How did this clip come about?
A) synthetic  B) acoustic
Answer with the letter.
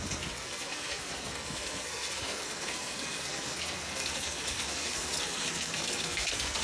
A